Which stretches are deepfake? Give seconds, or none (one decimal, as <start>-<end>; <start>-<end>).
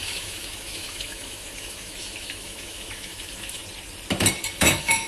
0.0-3.6; 4.6-5.1